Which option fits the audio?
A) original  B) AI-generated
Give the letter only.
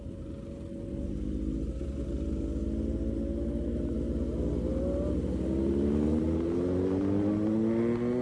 A